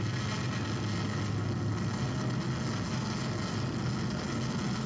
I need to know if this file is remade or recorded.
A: recorded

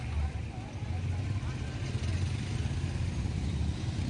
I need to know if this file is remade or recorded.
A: recorded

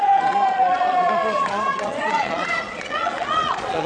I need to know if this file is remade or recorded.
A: remade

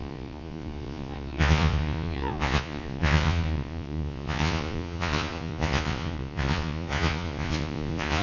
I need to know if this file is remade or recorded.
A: remade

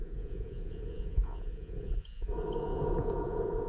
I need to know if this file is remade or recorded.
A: remade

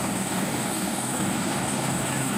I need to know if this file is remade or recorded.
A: remade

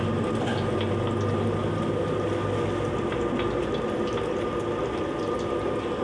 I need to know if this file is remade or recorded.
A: recorded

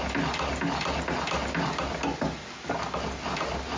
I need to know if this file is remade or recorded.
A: recorded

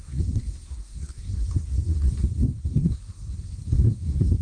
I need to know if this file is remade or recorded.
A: remade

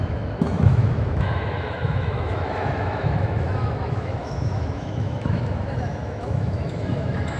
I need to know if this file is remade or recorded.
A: remade